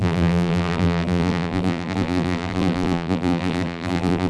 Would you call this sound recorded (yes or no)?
no